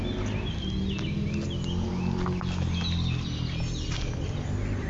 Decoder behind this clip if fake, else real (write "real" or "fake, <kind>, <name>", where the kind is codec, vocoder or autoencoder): real